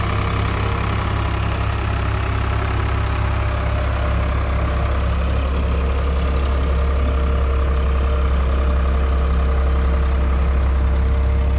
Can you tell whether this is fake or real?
real